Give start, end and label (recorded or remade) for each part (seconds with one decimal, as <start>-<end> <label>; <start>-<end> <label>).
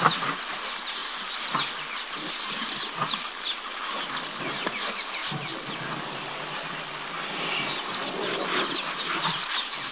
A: 0.0-9.9 recorded